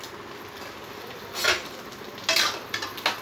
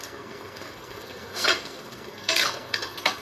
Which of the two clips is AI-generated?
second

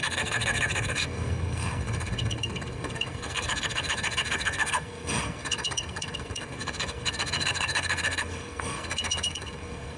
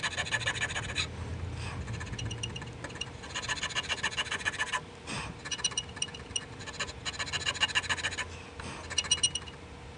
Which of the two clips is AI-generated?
first